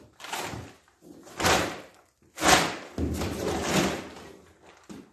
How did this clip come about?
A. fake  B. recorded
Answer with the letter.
B